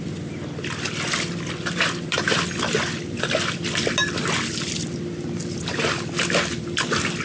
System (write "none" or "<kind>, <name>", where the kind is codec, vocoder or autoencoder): none